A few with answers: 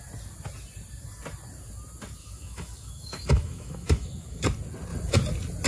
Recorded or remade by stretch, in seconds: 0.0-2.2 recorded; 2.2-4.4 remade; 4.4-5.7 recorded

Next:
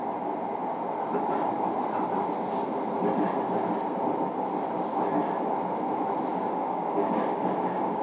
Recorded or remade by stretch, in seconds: 0.0-6.3 recorded; 6.3-8.0 remade

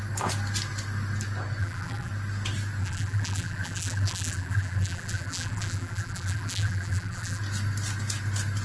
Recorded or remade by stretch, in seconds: 0.0-1.6 recorded; 1.6-2.1 remade; 2.1-2.8 recorded; 2.8-7.4 remade; 7.4-8.6 recorded

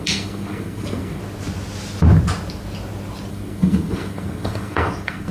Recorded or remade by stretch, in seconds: 0.0-1.2 remade; 1.2-3.3 recorded; 3.3-5.3 remade

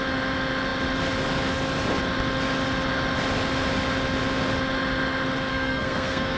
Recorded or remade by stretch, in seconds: 0.0-5.5 recorded; 5.5-6.4 remade